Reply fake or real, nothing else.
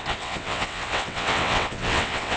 fake